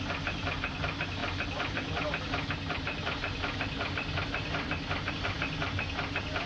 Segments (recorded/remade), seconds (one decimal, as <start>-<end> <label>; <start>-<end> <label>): 0.0-6.5 recorded